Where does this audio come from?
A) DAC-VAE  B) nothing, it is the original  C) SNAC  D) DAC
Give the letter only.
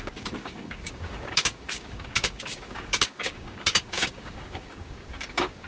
D